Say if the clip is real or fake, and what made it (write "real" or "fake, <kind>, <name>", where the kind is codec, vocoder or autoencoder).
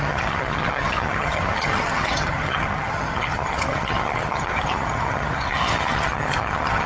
fake, vocoder, HiFi-GAN